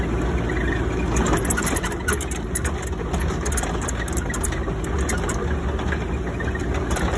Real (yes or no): yes